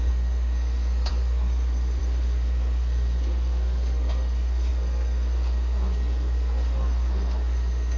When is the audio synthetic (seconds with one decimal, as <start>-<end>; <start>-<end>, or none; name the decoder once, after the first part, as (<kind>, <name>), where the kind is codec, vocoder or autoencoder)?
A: 0.0-8.0 (codec, SNAC)